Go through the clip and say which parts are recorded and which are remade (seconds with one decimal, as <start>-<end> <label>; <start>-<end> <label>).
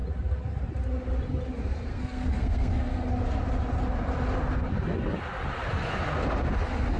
0.0-1.9 recorded; 1.9-3.1 remade; 3.1-7.0 recorded